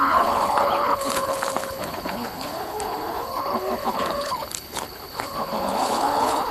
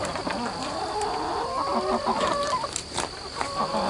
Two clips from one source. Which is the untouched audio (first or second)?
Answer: second